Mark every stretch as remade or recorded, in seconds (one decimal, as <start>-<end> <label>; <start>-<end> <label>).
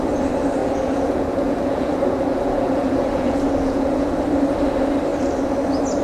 0.0-0.6 recorded; 0.6-4.2 remade; 4.2-6.0 recorded